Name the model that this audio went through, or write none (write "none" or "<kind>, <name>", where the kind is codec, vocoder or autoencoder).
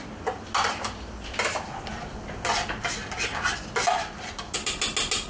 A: none